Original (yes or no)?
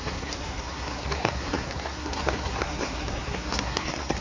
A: no